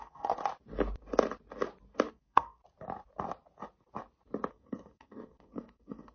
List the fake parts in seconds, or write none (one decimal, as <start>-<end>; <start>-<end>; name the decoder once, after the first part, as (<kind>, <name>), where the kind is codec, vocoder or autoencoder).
0.0-0.4 (codec, SNAC); 2.1-2.6; 4.5-6.1